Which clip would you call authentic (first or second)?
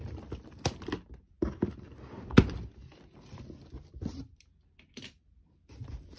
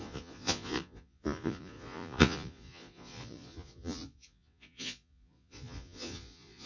first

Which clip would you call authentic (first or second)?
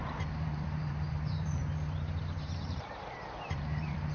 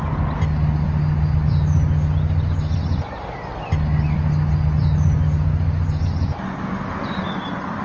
second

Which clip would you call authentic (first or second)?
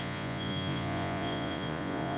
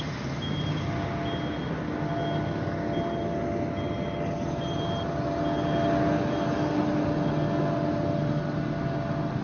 second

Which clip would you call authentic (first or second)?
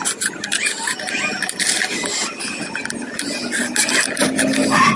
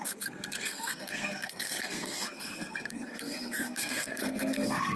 first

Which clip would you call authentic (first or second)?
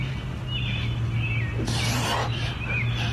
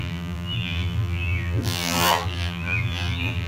first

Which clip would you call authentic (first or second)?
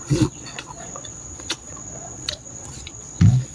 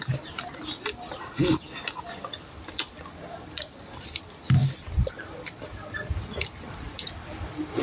second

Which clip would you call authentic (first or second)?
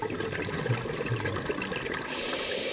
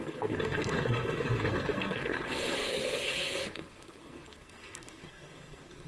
first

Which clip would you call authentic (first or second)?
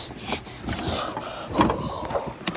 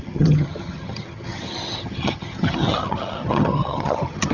first